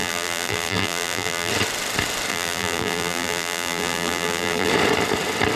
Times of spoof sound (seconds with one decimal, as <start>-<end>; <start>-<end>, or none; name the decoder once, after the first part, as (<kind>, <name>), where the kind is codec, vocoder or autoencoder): 0.0-1.5 (vocoder, BigVGAN v2); 2.3-4.7